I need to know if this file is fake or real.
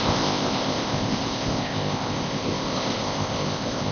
fake